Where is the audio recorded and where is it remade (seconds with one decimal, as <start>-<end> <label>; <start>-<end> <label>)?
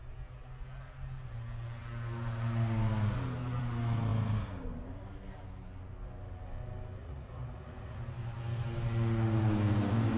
0.0-7.0 recorded; 7.0-8.0 remade; 8.0-10.2 recorded